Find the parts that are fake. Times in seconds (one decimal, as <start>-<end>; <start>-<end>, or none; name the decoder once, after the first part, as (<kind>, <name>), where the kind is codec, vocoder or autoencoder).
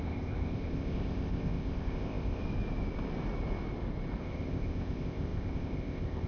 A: 0.0-2.4 (codec, ZipCodec); 4.2-6.3